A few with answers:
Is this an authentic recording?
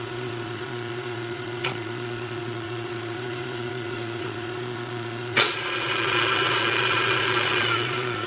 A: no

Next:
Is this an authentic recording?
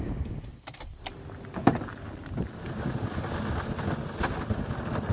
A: yes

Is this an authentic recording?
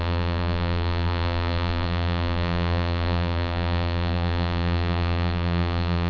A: no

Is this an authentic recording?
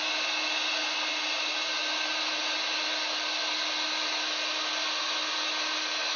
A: yes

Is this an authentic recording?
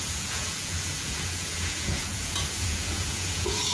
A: no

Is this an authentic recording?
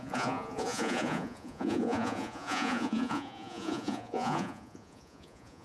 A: no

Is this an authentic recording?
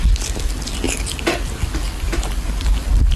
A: yes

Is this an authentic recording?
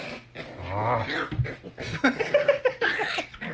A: yes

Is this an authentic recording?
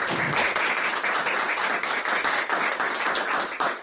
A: yes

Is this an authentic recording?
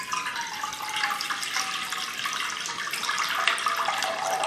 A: yes